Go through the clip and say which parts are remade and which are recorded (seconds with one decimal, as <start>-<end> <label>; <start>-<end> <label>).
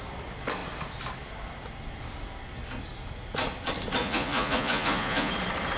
0.0-4.0 recorded; 4.0-5.3 remade; 5.3-5.8 recorded